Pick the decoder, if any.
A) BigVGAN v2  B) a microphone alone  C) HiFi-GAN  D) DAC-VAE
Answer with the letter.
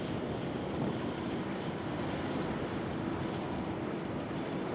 B